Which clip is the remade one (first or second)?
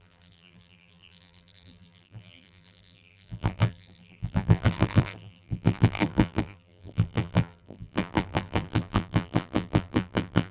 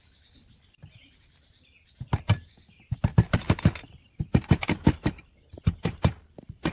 first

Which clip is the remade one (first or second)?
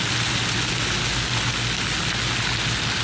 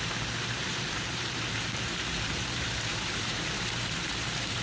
second